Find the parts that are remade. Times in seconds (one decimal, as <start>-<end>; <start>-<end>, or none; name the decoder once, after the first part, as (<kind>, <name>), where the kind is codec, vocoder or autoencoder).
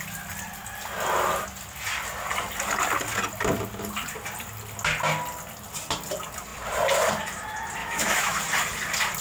7.8-8.4 (autoencoder, DAC-VAE)